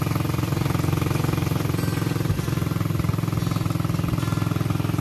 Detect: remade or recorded recorded